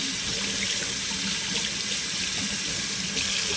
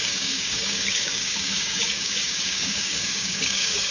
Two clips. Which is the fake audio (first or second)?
second